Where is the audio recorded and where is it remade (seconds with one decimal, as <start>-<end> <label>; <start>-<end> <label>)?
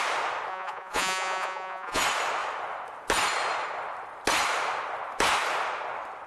0.0-0.5 recorded; 0.5-2.0 remade; 2.0-6.3 recorded